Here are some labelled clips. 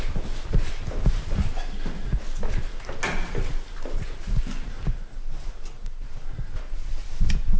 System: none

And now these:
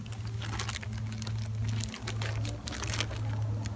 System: none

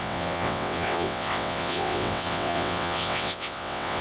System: vocoder, WaveNeXt